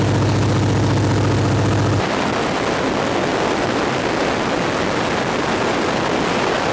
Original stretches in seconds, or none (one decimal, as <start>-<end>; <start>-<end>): 0.0-6.7